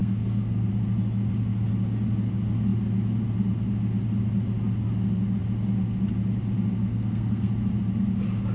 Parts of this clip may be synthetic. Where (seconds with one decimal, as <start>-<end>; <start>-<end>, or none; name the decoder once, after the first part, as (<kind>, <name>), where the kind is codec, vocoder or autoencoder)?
0.0-0.7 (codec, SNAC); 6.8-7.5